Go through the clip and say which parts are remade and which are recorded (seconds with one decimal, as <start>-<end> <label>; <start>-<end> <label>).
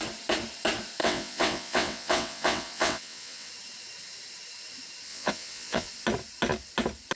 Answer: 0.0-1.0 recorded; 1.0-3.5 remade; 3.5-5.1 recorded; 5.1-5.9 remade; 5.9-7.2 recorded